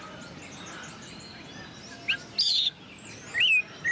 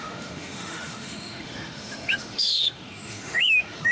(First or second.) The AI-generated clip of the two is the second